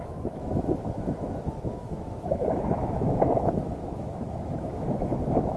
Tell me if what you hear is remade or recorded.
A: remade